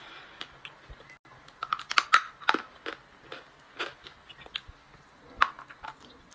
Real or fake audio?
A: real